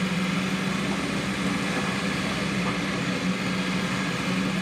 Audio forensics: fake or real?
real